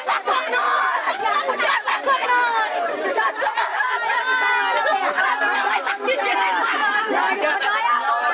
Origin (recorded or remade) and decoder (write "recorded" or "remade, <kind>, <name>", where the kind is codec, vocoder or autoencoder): recorded